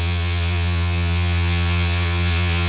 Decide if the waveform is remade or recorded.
remade